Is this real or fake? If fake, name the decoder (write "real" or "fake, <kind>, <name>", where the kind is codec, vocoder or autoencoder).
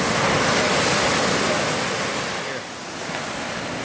real